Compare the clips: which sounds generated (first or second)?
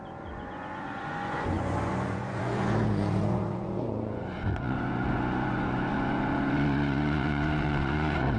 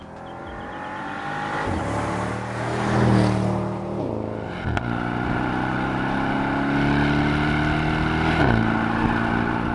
first